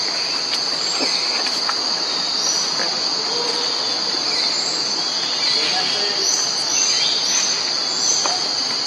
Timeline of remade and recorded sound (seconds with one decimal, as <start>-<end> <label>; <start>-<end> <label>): 0.0-8.9 recorded